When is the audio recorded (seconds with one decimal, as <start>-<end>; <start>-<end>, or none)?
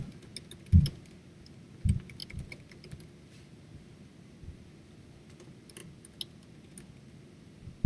0.0-7.9